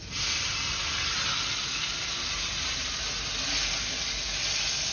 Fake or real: real